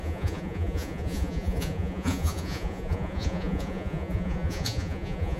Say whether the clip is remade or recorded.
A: remade